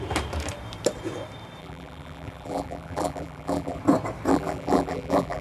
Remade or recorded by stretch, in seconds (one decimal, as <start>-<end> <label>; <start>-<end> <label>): 0.0-1.6 recorded; 1.6-3.8 remade; 3.8-4.3 recorded; 4.3-5.4 remade